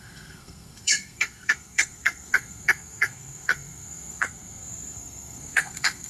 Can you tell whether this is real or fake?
fake